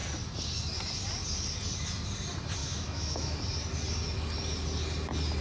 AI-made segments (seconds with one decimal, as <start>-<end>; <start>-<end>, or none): 2.6-3.4

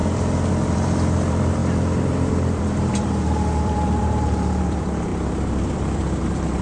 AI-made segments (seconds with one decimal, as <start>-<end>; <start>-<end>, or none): 0.0-6.6

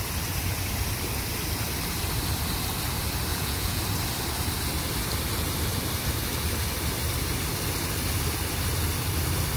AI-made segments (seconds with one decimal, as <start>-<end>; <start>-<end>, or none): 3.3-3.8

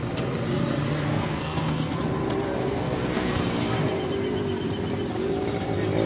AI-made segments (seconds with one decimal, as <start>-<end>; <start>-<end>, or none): 1.1-2.0; 2.6-3.4

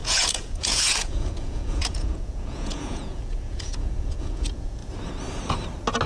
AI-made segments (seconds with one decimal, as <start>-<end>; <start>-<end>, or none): 0.0-4.8